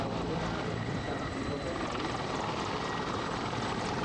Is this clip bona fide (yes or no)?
yes